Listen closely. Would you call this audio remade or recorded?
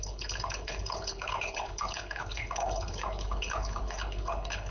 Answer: remade